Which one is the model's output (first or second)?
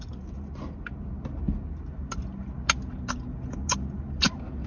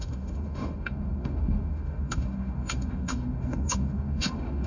second